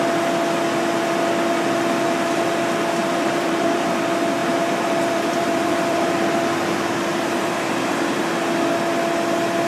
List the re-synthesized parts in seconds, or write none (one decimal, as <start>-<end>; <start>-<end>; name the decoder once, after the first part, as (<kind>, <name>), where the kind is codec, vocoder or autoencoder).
3.0-4.0 (vocoder, BigVGAN v2); 4.4-6.1; 7.1-8.3